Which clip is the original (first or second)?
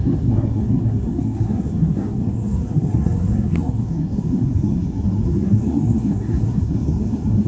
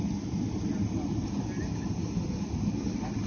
second